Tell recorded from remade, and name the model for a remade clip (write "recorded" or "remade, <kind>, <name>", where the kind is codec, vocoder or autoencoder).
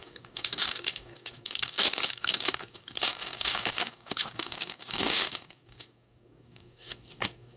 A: remade, codec, DAC